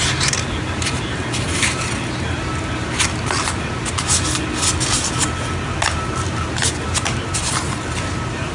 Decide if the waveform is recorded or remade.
recorded